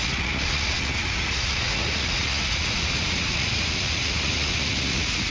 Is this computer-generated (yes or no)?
yes